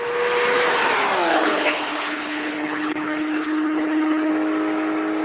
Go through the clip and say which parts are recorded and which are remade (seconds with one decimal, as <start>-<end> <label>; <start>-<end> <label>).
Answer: 0.0-1.3 recorded; 1.3-4.3 remade; 4.3-5.2 recorded